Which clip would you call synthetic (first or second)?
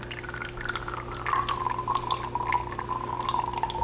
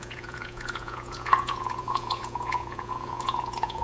second